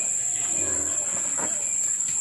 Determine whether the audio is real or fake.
real